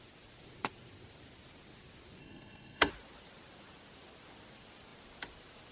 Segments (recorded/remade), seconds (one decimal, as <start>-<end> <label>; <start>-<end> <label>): 0.0-2.2 recorded; 2.2-2.9 remade; 2.9-5.7 recorded